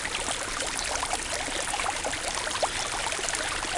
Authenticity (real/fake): real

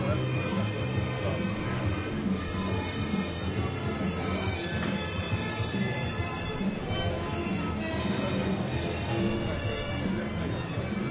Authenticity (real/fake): real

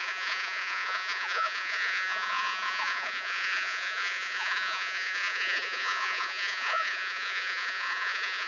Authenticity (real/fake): fake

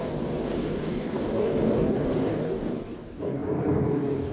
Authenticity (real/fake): fake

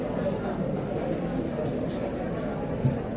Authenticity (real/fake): real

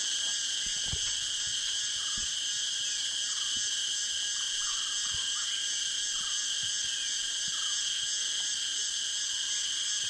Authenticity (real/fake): real